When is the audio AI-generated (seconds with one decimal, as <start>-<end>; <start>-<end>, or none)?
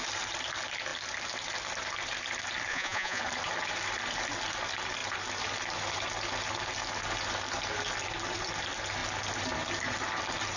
2.7-3.2